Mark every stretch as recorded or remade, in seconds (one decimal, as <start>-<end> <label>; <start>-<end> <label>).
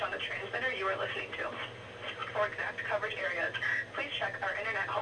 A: 0.0-5.0 recorded